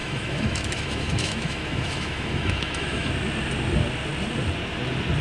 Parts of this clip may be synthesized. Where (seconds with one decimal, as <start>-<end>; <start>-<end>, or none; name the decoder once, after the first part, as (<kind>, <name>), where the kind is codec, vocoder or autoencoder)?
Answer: 0.0-3.1 (autoencoder, DAC-VAE)